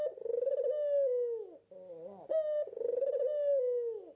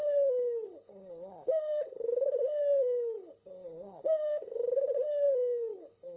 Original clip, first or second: first